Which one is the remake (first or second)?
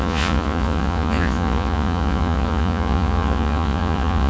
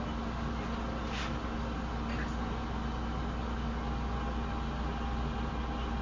first